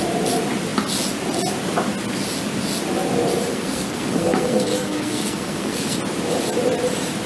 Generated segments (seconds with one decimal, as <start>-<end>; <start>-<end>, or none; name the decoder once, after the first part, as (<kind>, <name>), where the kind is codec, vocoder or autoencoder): 3.5-6.0 (codec, SNAC)